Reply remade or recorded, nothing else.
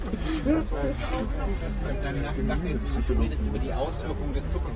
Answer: recorded